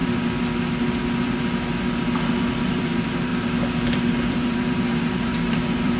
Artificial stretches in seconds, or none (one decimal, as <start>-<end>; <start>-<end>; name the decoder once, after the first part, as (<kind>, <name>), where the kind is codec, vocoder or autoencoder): 2.6-3.3 (vocoder, BigVGAN v2); 4.3-6.0

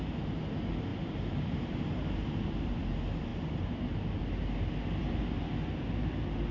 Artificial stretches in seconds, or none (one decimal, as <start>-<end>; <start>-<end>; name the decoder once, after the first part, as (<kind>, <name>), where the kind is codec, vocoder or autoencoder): 0.9-2.5 (vocoder, BigVGAN v2); 3.3-3.8